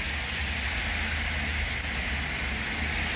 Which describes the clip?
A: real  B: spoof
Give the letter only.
A